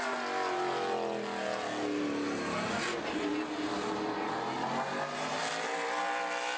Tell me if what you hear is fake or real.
real